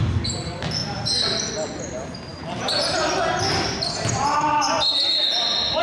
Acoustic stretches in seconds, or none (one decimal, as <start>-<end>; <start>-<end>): 0.0-5.8

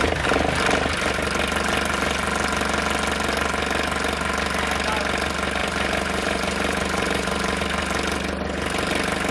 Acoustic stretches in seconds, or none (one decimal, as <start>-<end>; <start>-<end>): 0.0-5.6; 7.6-9.3

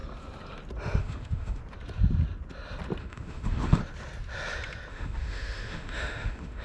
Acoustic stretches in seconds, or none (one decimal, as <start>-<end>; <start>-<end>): 0.0-1.0; 1.6-3.0; 3.8-4.9

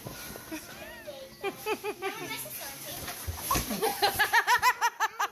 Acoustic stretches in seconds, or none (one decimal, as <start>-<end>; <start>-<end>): 0.0-5.3

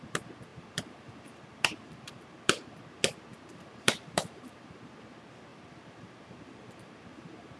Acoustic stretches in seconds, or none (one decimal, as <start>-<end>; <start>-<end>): 0.0-0.5; 2.8-3.3; 4.8-5.5

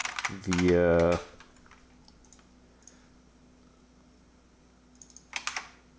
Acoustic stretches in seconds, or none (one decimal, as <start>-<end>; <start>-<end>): 0.0-6.0

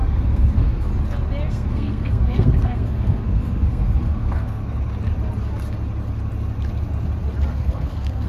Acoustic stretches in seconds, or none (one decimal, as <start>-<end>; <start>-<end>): 0.9-1.5; 4.6-7.5

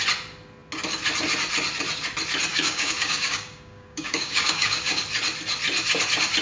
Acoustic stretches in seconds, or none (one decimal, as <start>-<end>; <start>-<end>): 0.0-2.5; 5.0-6.4